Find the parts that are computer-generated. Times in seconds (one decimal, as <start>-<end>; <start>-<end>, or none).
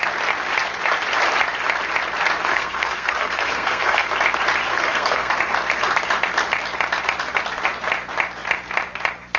2.5-4.1; 4.7-5.3